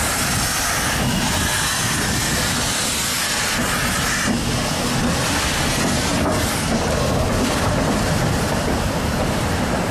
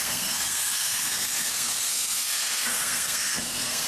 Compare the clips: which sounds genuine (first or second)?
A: first